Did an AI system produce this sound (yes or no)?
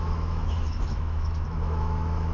yes